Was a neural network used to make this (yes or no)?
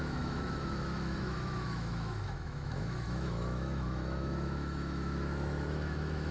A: yes